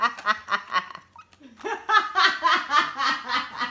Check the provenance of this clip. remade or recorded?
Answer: recorded